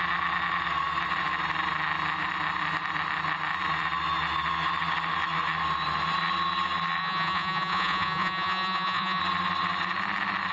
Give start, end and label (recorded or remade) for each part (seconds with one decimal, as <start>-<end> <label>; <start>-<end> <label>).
0.0-7.0 recorded; 7.0-9.2 remade; 9.2-10.5 recorded